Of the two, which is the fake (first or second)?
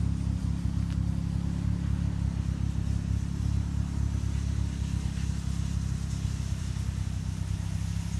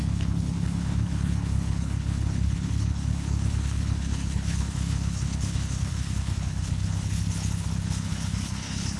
second